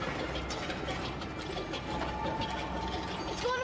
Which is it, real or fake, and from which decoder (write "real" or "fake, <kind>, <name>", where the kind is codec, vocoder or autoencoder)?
real